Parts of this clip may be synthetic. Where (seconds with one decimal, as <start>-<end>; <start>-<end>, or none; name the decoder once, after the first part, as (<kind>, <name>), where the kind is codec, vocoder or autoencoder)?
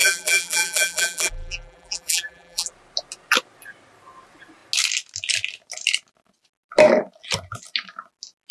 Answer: 0.0-2.7 (vocoder, BigVGAN v2)